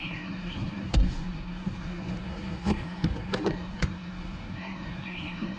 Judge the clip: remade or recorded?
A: remade